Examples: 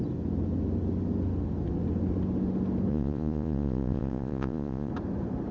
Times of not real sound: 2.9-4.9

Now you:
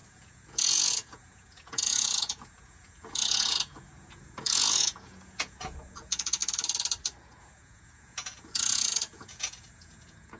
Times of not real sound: 0.0-6.4; 7.2-10.4

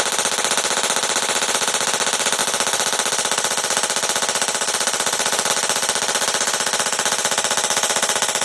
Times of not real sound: 2.4-5.5

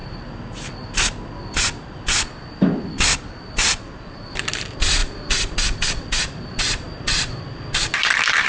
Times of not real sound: 4.6-8.5

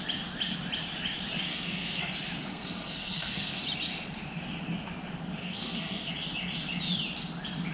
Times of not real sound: 1.5-2.0; 2.5-3.6; 5.4-6.1